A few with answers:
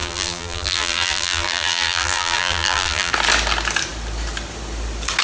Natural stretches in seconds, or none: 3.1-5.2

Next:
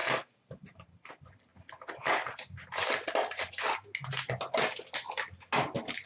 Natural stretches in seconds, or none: 1.1-6.1

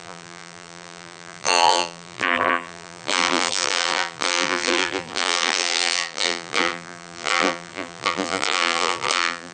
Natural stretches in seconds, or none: none

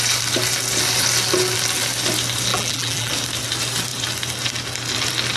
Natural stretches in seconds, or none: 0.0-2.5; 3.1-5.4

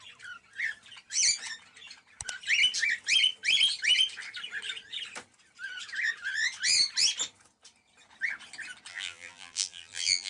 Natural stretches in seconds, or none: 0.0-8.9

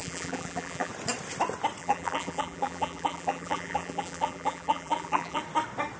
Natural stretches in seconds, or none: 0.9-1.8; 5.4-6.0

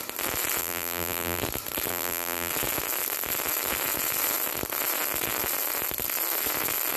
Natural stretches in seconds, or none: 0.0-0.6; 1.4-1.9; 2.5-7.0

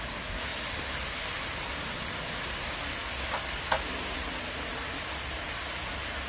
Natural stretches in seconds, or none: 0.0-6.3